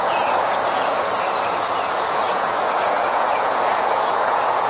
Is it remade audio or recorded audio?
remade